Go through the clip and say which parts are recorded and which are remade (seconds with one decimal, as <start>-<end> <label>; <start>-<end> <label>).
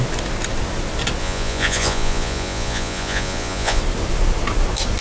0.0-1.2 recorded; 1.2-3.8 remade; 3.8-5.0 recorded